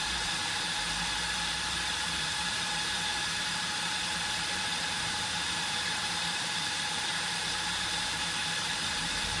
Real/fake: fake